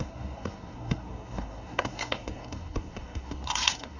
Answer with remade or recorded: remade